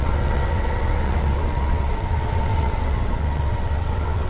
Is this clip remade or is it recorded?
remade